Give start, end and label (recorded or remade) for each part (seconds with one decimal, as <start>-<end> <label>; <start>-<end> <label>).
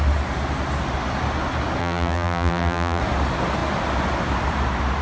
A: 0.0-1.8 recorded; 1.8-3.0 remade; 3.0-5.0 recorded